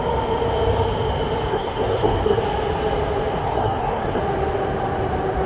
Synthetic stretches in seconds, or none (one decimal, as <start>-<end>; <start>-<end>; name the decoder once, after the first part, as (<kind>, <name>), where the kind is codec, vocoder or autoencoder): 1.5-2.4 (codec, SNAC); 3.4-4.2

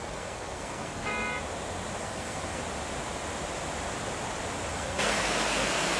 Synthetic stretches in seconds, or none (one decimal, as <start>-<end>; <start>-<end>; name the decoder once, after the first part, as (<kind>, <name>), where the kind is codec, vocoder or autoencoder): 0.0-1.1 (codec, SNAC); 2.0-2.6; 4.7-6.0